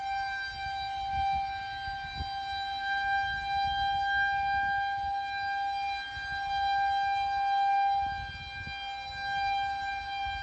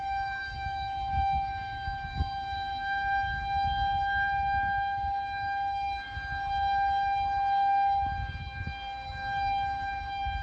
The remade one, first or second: second